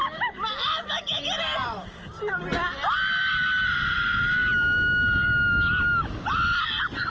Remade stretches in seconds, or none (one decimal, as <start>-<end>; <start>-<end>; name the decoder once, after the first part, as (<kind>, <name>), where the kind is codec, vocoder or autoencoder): 1.6-2.1 (vocoder, BigVGAN v2)